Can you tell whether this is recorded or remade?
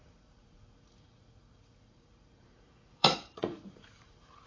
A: remade